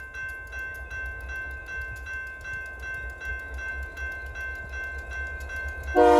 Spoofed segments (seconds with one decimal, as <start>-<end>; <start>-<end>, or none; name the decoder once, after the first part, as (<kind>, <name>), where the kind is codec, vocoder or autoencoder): none